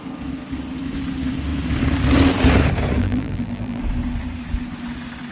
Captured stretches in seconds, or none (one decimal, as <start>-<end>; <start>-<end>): 0.0-3.0; 3.8-5.3